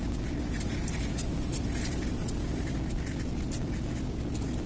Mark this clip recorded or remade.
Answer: recorded